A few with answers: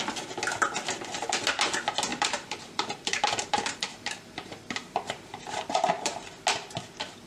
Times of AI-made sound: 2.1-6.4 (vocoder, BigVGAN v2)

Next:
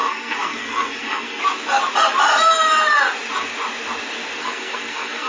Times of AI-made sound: 0.0-1.4 (codec, SNAC); 4.4-5.3

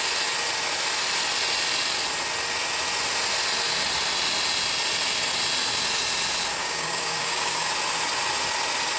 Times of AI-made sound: 6.6-7.7 (codec, DAC)

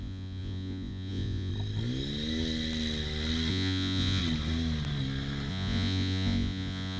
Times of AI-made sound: 0.0-1.5 (vocoder, Vocos); 3.5-4.2; 5.5-7.0